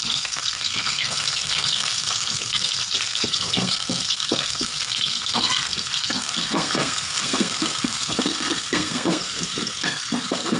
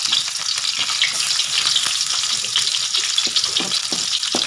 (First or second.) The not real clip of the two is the first